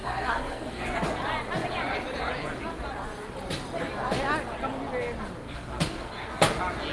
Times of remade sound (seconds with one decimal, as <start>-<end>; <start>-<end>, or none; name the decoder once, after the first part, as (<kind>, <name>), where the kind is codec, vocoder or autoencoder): 0.0-1.0 (codec, SNAC); 5.4-6.3